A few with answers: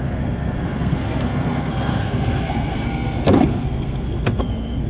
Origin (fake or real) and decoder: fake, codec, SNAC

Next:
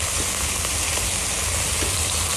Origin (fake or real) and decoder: real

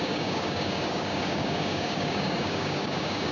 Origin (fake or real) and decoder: fake, codec, DAC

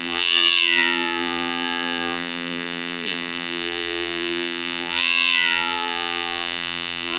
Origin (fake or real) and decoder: fake, vocoder, BigVGAN v2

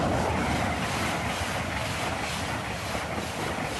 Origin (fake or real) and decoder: real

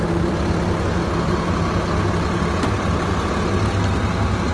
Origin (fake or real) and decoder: real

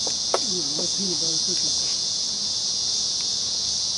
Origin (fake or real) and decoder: fake, vocoder, Vocos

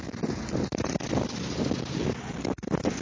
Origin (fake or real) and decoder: real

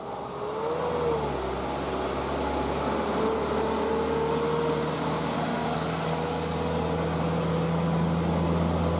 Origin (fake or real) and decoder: real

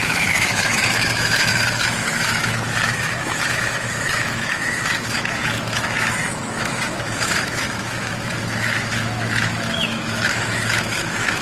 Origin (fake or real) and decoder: fake, autoencoder, DAC-VAE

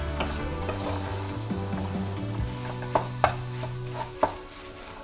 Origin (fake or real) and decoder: real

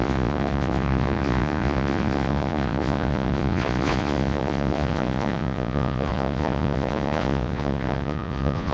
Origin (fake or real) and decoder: fake, vocoder, Vocos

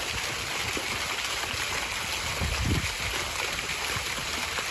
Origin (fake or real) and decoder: real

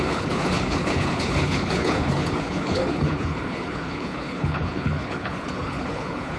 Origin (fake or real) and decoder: fake, codec, HILCodec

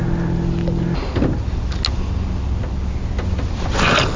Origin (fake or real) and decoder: real